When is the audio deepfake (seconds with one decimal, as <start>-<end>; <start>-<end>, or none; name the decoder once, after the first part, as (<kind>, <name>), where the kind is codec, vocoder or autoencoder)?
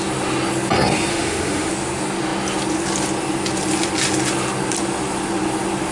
1.1-1.7 (autoencoder, DAC-VAE)